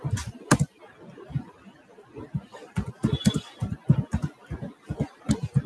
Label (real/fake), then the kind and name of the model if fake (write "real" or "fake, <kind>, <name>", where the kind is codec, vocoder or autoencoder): real